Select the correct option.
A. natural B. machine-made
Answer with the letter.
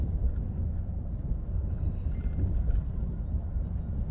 A